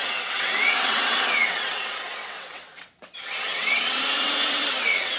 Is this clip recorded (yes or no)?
no